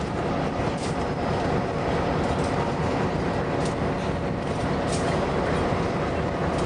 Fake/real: real